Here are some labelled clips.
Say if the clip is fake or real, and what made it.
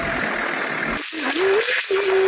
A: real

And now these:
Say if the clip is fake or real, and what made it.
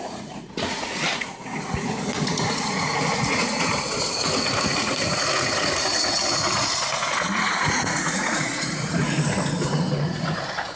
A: fake, vocoder, Vocos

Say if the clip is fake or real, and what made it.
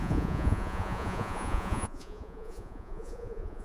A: fake, vocoder, Vocos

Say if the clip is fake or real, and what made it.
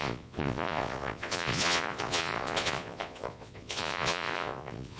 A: fake, vocoder, Vocos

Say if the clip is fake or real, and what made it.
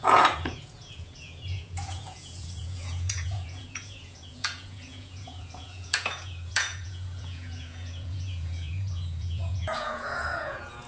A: fake, vocoder, Vocos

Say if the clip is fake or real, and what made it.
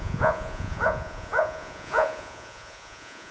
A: fake, vocoder, Vocos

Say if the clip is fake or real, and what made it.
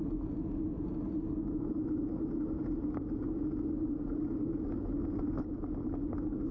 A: real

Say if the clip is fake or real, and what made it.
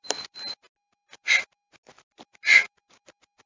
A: real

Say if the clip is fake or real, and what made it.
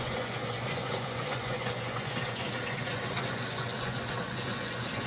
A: fake, vocoder, Vocos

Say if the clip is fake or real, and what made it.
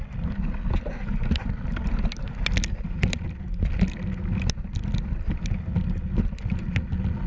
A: real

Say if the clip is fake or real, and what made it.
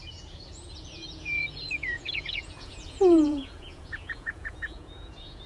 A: fake, vocoder, Vocos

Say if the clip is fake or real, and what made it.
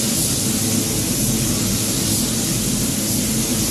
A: real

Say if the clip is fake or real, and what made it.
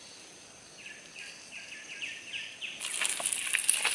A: real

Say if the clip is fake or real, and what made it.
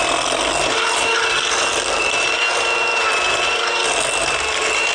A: real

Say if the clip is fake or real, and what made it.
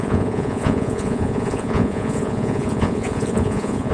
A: fake, vocoder, Vocos